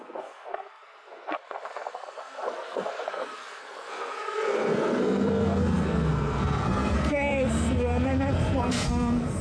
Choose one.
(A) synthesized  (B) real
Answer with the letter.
A